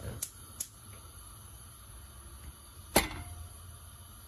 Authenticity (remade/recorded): recorded